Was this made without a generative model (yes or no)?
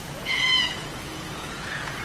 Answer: no